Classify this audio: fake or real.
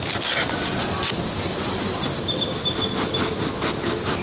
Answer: real